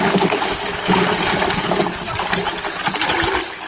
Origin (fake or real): real